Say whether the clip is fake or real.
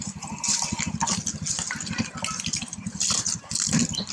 real